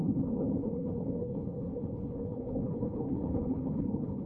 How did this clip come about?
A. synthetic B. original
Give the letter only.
A